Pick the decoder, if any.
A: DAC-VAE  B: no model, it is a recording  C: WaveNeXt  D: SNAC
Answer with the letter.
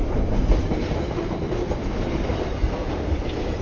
B